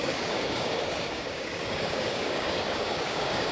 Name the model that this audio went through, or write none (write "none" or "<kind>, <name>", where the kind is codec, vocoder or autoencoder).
codec, DAC